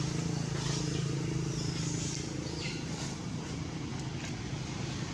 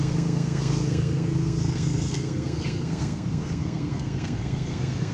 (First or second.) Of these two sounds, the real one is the first